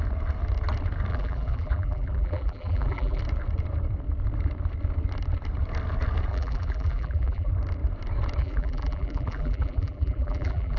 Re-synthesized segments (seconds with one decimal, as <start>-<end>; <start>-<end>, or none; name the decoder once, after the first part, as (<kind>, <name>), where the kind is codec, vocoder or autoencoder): 1.1-3.2 (vocoder, BigVGAN v2); 6.3-7.5; 8.4-10.8